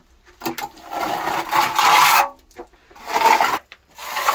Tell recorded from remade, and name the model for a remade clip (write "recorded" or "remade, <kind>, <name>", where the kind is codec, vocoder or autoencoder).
recorded